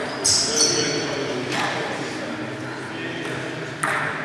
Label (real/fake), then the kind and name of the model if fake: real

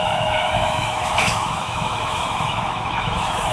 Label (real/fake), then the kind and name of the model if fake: fake, autoencoder, DAC-VAE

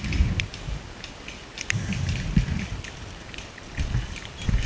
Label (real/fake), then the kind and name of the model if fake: real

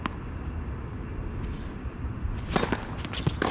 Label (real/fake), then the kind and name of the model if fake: real